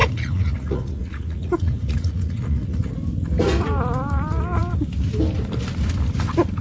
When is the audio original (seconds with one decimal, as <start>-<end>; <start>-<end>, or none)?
2.9-6.6